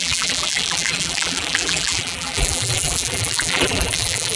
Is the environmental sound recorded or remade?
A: remade